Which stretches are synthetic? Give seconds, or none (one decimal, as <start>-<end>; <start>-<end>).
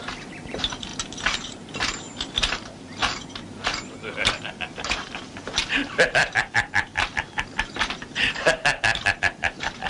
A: 0.0-0.9; 1.5-3.0; 4.3-6.9; 9.2-9.9